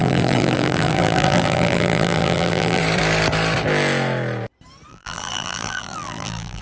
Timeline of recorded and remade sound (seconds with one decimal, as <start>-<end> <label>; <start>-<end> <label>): 0.0-2.8 remade; 2.8-4.9 recorded; 4.9-6.6 remade